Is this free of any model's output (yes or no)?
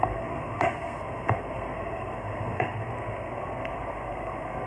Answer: no